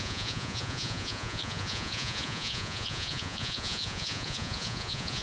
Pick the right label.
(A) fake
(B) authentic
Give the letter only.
A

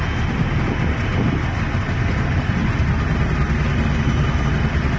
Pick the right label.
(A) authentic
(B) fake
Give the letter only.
A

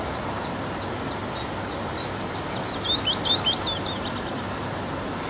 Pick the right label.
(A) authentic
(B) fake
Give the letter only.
A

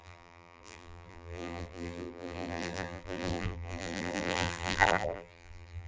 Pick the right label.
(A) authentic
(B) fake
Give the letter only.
B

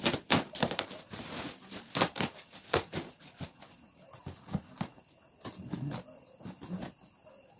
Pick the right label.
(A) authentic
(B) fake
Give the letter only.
A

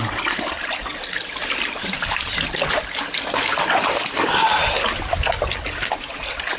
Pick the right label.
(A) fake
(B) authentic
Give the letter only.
B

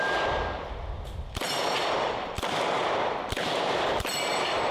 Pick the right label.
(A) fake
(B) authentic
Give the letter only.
A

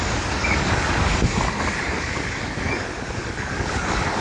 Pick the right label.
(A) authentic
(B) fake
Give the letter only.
B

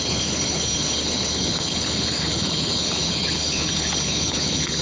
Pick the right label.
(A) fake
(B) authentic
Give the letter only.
A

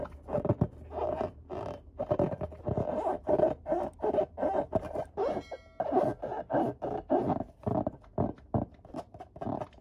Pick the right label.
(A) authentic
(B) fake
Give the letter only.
A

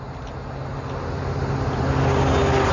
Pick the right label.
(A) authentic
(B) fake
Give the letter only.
A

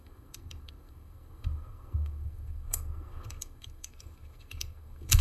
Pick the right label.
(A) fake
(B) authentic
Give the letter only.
A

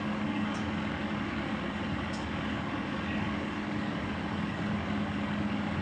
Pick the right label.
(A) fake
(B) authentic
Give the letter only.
A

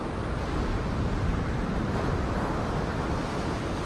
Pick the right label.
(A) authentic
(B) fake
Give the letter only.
A